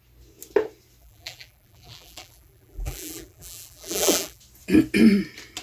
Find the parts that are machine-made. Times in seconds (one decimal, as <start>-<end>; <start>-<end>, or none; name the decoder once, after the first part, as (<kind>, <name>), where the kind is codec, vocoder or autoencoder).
1.0-4.4 (vocoder, BigVGAN v2)